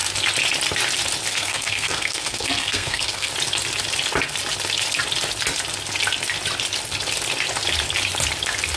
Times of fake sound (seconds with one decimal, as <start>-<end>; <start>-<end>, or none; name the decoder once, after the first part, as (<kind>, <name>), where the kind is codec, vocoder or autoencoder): 1.3-3.3 (codec, SNAC)